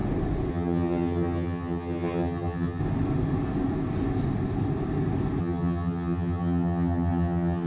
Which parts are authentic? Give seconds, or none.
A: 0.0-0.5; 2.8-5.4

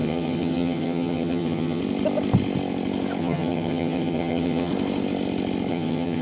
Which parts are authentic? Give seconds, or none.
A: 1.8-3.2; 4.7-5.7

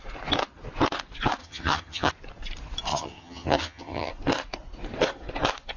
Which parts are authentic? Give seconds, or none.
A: 0.0-1.4; 2.1-2.9; 4.1-5.8